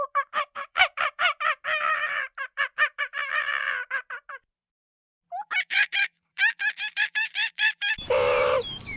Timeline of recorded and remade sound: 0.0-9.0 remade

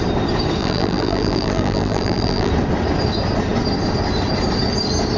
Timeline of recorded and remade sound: 0.0-0.6 recorded; 0.6-2.5 remade; 2.5-5.2 recorded

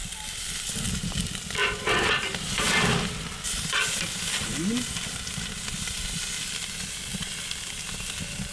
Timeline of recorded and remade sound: 0.0-1.2 remade; 1.2-7.1 recorded; 7.1-8.5 remade

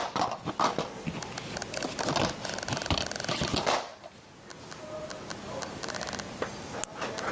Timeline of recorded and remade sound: 0.0-7.3 recorded

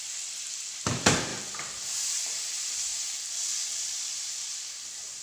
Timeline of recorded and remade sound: 0.0-5.2 remade

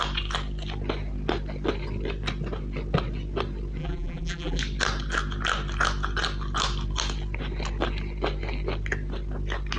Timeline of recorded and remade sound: 0.0-3.8 recorded; 3.8-4.6 remade; 4.6-9.8 recorded